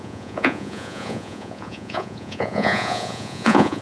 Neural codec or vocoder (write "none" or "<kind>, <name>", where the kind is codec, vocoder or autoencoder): vocoder, Vocos